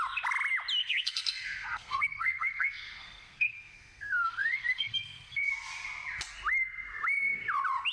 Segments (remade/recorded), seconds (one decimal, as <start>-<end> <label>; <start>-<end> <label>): 0.0-0.8 recorded; 0.8-5.5 remade; 5.5-7.9 recorded